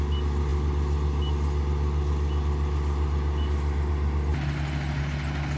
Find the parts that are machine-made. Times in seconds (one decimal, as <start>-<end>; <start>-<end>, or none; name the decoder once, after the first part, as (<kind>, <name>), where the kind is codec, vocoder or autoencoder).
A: none